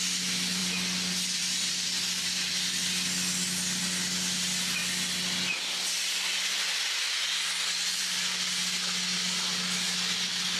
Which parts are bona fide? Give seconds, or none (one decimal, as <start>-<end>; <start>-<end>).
0.0-10.6

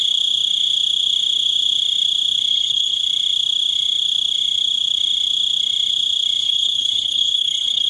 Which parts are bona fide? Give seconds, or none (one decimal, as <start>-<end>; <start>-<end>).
0.0-2.5; 3.0-6.4